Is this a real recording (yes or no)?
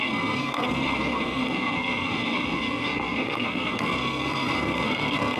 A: no